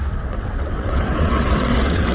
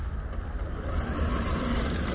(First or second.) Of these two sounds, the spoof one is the first